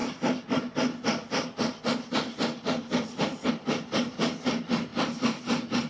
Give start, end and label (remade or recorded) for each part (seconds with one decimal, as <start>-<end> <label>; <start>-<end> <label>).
0.0-5.9 recorded